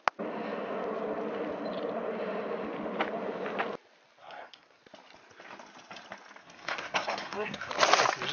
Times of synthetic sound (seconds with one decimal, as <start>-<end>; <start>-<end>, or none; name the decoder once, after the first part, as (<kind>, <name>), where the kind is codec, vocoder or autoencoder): 4.2-4.8 (codec, SNAC); 6.4-7.7